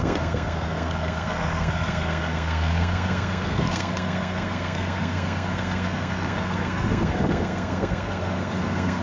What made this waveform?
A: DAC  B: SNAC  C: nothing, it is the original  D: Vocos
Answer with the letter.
B